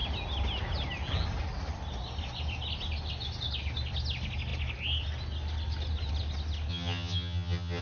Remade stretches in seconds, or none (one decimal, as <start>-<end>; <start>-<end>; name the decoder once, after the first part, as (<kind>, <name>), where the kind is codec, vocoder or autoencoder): 6.7-7.8 (vocoder, HiFi-GAN)